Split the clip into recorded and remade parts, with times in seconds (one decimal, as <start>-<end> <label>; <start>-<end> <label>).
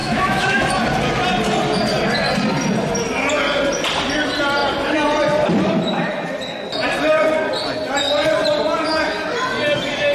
0.0-0.8 remade; 0.8-10.1 recorded